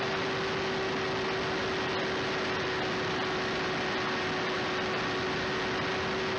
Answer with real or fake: real